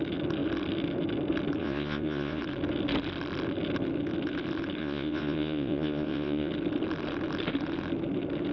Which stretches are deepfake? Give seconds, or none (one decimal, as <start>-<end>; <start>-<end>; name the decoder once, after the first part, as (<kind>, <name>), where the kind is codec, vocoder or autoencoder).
1.6-2.4 (vocoder, Vocos); 4.8-6.5